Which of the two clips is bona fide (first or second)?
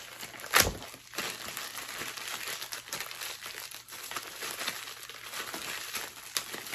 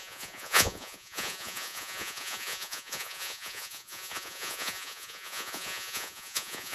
first